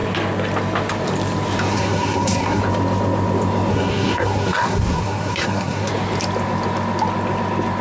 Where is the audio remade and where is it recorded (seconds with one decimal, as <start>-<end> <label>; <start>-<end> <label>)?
0.0-1.7 recorded; 1.7-2.6 remade; 2.6-3.7 recorded; 3.7-5.9 remade; 5.9-7.8 recorded